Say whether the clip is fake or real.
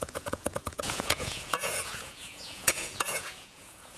fake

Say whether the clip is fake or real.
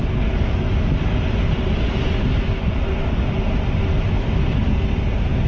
real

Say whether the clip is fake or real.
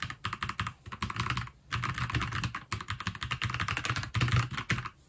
real